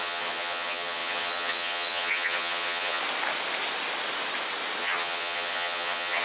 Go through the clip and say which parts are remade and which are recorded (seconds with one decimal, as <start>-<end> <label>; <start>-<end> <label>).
0.0-3.0 remade; 3.0-4.8 recorded; 4.8-6.2 remade